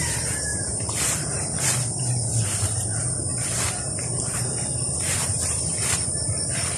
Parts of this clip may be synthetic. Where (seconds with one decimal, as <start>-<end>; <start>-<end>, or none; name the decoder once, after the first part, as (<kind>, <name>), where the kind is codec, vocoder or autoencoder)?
0.0-6.8 (vocoder, BigVGAN v2)